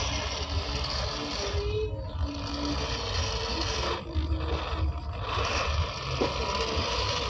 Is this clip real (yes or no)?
yes